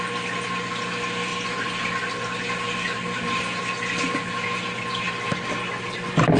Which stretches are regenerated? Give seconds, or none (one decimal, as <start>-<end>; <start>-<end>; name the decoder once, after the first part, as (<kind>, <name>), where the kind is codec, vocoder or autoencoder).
none